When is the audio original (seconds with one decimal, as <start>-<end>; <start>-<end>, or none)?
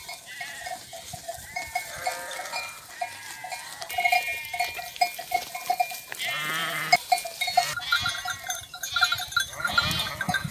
0.0-10.5